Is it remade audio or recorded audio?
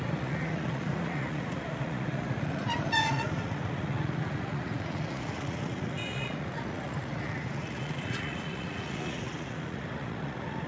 remade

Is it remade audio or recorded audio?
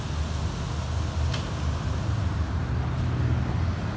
recorded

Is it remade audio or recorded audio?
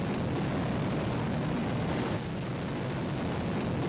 recorded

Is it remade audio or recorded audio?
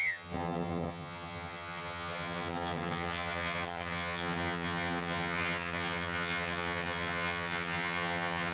remade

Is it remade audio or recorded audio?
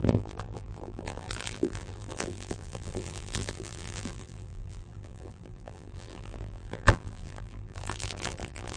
remade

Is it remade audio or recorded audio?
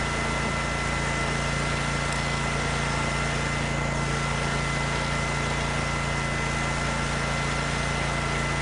recorded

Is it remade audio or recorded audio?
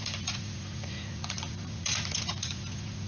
remade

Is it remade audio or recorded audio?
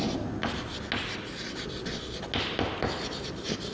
recorded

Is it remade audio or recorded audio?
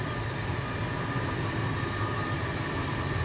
recorded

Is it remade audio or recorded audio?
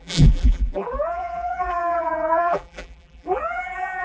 remade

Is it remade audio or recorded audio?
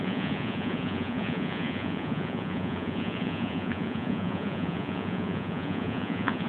remade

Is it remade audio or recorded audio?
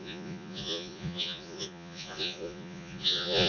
remade